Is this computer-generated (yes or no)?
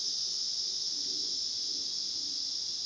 no